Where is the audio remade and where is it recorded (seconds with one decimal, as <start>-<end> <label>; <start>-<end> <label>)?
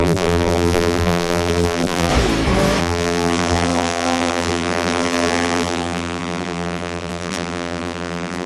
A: 0.0-2.1 remade; 2.1-2.8 recorded; 2.8-8.5 remade